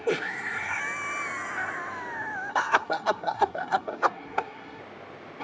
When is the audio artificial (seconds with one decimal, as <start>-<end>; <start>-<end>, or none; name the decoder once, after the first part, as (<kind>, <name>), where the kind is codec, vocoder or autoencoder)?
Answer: 0.0-0.8 (codec, SNAC); 2.5-4.8